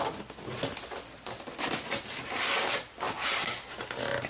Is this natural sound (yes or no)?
yes